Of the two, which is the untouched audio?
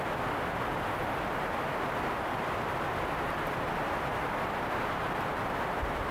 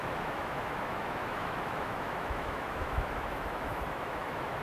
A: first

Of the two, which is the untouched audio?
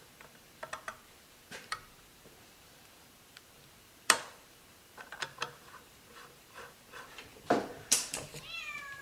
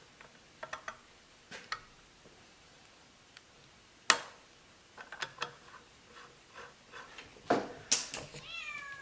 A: second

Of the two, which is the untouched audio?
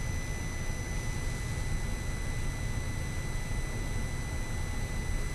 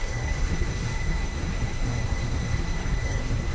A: first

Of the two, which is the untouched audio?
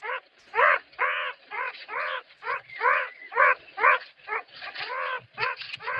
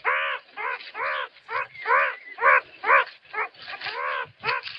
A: second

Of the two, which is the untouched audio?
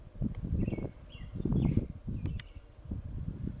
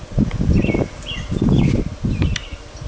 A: second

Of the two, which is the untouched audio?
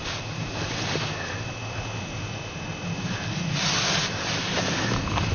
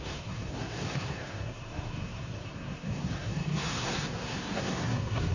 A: first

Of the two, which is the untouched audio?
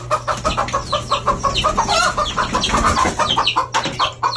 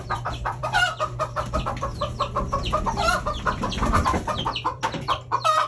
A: first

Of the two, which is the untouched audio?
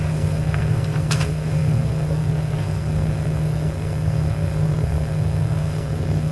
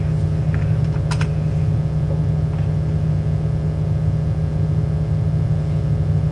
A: second